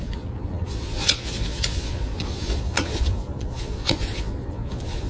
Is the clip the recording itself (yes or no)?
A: no